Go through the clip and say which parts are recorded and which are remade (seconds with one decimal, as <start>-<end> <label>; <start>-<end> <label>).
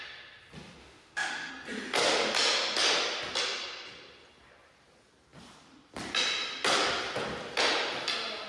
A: 0.0-0.8 recorded; 0.8-1.5 remade; 1.5-8.5 recorded